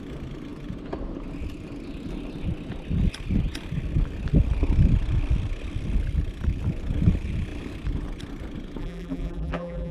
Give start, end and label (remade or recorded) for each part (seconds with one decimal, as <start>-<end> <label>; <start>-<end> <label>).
0.0-8.8 recorded; 8.8-9.9 remade